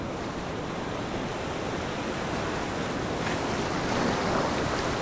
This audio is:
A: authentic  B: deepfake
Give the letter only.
A